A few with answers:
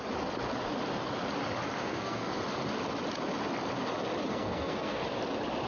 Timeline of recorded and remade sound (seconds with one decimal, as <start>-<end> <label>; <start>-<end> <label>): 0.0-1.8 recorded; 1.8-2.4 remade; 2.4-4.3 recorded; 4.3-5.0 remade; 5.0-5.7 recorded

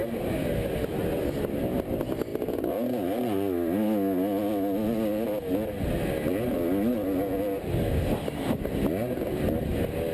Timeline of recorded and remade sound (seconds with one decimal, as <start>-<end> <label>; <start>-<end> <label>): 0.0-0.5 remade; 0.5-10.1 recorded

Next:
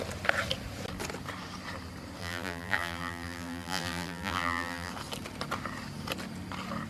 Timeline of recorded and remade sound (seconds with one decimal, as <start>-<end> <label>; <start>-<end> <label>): 0.0-2.2 recorded; 2.2-4.9 remade; 4.9-6.9 recorded

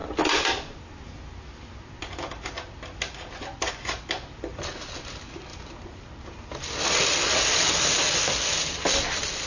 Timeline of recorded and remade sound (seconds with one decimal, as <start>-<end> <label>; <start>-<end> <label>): 0.0-9.5 recorded

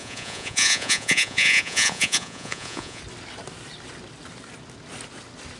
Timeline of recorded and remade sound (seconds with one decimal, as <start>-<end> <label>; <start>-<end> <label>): 0.0-3.0 remade; 3.0-5.6 recorded

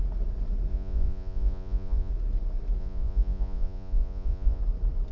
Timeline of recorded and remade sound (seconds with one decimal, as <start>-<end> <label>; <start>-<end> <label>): 0.0-0.7 recorded; 0.7-2.1 remade; 2.1-2.8 recorded; 2.8-4.6 remade; 4.6-5.1 recorded

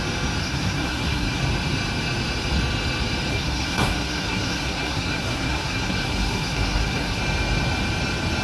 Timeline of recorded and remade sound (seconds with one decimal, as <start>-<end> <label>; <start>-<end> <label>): 0.0-0.4 recorded; 0.4-1.4 remade; 1.4-3.3 recorded; 3.3-7.2 remade; 7.2-8.4 recorded

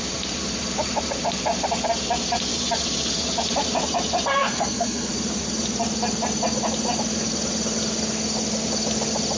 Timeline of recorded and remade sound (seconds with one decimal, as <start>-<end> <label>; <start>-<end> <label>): 0.0-4.4 recorded; 4.4-5.1 remade; 5.1-9.4 recorded